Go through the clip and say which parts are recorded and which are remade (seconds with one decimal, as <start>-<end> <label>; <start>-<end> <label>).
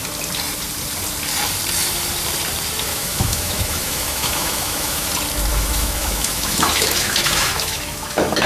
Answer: 0.0-2.9 recorded; 2.9-5.1 remade; 5.1-5.5 recorded; 5.5-8.5 remade